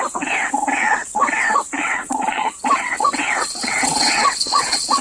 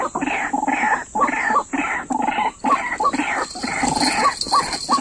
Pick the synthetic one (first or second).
first